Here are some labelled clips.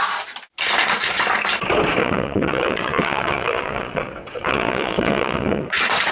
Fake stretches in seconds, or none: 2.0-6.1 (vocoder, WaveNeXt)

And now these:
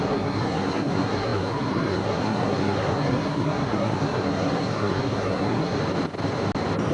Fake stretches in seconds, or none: 0.0-5.8 (codec, SNAC)

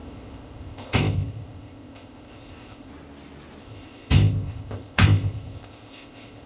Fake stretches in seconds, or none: 0.0-2.9 (codec, ZipCodec); 3.6-6.5